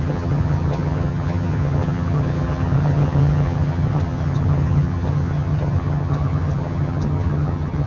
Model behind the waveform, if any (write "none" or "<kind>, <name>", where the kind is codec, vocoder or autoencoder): vocoder, HiFi-GAN